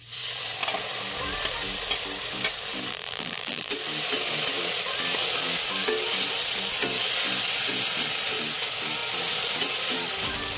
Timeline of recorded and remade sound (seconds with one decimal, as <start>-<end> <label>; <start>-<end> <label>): 0.0-2.9 recorded; 2.9-3.7 remade; 3.7-10.6 recorded